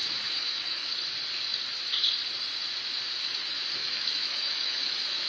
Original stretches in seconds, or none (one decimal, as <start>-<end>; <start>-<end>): 0.9-3.8